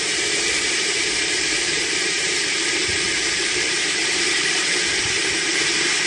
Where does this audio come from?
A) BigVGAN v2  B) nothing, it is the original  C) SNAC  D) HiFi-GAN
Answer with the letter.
A